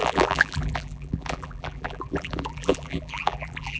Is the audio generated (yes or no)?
yes